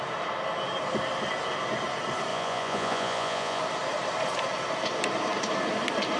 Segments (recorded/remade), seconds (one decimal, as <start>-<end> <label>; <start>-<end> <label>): 0.0-2.3 recorded; 2.3-3.6 remade; 3.6-6.2 recorded